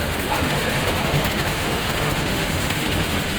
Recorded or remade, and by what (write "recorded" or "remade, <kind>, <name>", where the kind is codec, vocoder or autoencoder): remade, autoencoder, DAC-VAE